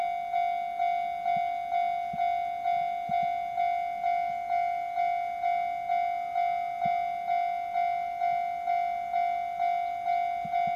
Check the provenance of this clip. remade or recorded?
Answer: recorded